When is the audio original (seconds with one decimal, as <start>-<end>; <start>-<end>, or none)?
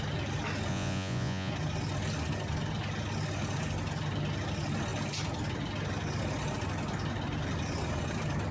0.0-0.7; 1.5-8.5